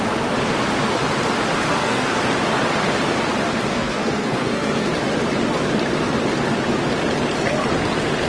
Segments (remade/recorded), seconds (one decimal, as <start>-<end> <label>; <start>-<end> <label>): 0.0-1.7 recorded; 1.7-2.2 remade; 2.2-3.7 recorded; 3.7-4.9 remade; 4.9-8.3 recorded